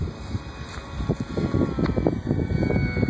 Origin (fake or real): real